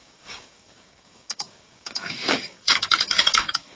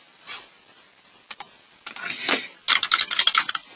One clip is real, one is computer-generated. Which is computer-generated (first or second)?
first